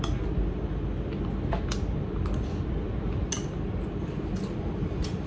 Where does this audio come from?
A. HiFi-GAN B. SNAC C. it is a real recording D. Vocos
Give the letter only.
C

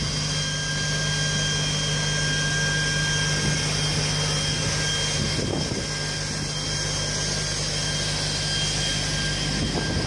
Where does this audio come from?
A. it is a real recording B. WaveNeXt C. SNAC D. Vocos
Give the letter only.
A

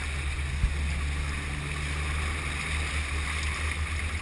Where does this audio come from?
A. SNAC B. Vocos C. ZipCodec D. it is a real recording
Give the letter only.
D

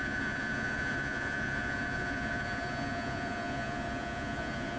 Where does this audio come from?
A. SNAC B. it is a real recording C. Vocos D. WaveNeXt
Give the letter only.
C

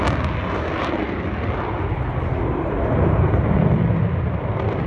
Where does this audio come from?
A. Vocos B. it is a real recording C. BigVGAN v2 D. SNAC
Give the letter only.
B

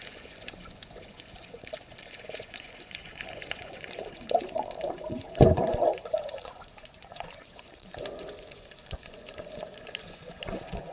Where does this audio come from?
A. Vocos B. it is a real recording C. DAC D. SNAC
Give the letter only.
A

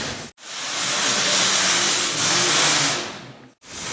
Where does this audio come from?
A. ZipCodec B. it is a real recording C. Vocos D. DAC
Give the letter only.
B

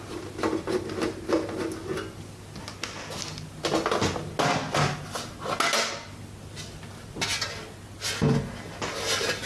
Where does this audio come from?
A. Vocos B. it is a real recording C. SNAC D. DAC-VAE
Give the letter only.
B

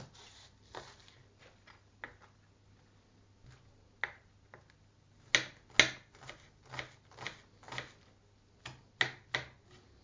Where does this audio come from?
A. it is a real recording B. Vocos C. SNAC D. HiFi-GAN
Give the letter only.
A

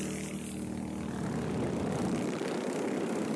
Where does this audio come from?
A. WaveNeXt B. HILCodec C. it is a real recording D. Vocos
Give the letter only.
C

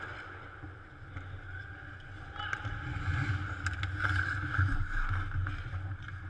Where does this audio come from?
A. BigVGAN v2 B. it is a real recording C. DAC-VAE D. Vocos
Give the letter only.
B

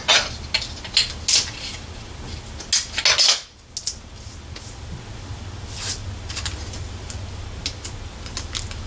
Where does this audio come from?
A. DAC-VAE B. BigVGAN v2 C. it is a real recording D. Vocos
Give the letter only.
C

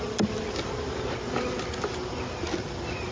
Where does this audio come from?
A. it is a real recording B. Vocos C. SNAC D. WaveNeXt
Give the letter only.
A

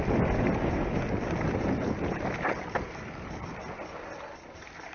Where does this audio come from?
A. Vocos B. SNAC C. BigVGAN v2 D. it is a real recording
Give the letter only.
D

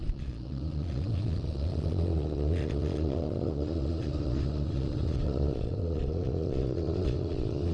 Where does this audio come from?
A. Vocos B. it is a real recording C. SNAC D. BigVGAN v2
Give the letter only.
A